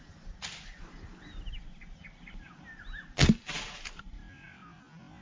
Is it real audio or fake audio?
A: real